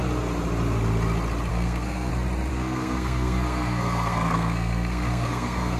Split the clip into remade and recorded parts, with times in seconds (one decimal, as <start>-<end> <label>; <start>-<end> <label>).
0.0-1.5 recorded; 1.5-2.1 remade; 2.1-2.5 recorded; 2.5-5.8 remade